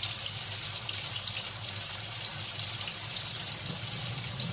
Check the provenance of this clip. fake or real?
real